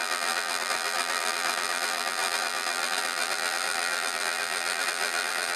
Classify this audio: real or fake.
fake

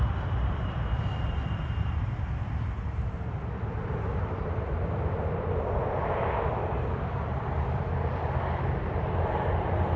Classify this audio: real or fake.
fake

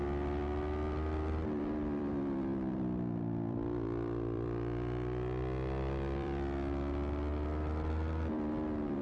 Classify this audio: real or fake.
fake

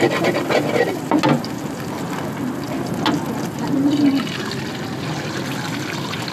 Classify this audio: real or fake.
real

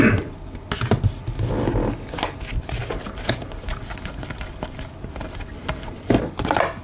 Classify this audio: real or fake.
real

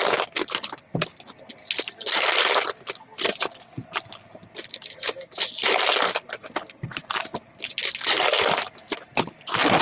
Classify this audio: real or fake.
real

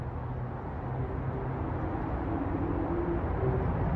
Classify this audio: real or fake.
real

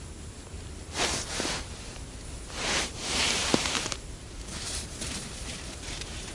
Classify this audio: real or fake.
fake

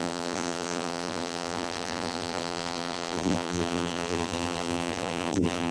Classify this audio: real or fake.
fake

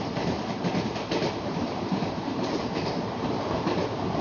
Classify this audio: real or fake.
fake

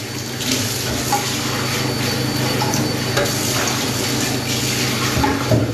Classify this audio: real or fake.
real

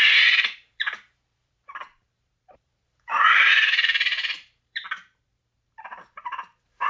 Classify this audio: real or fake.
fake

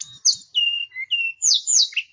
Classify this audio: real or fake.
real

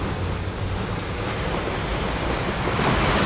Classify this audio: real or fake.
real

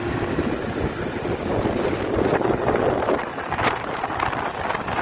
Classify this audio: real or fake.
real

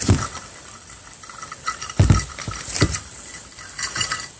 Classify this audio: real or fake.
fake